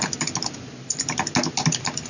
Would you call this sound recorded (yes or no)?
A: yes